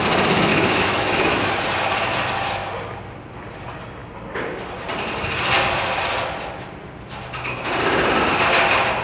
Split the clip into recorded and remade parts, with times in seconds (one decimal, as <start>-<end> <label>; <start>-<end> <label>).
0.0-0.5 recorded; 0.5-1.5 remade; 1.5-9.0 recorded